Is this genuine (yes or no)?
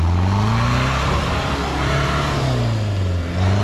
yes